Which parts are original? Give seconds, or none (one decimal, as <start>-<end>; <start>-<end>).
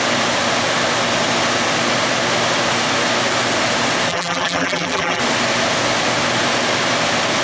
0.0-4.1; 5.2-7.4